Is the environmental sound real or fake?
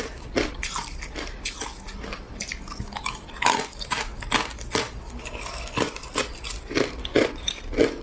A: real